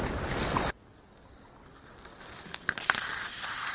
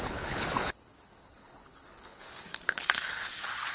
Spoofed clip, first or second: second